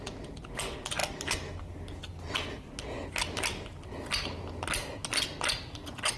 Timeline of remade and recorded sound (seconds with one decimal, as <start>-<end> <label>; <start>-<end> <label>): 0.0-6.2 recorded

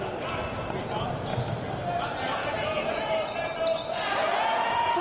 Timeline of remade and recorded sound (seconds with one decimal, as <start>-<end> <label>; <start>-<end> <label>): 0.0-2.4 recorded; 2.4-3.1 remade; 3.1-4.2 recorded; 4.2-5.0 remade